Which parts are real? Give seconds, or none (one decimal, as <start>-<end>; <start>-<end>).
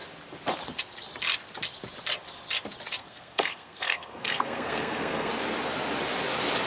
0.0-3.0; 5.3-6.7